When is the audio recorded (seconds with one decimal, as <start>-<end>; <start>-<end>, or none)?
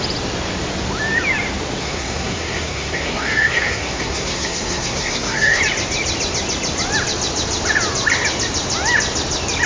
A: 0.0-1.8; 5.6-9.7